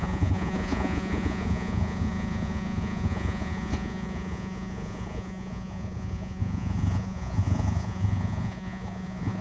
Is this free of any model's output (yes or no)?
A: no